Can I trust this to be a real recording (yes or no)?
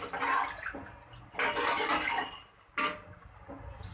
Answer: yes